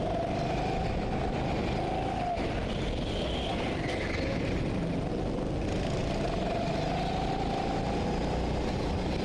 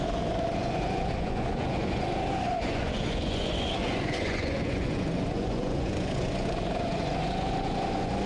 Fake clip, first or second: second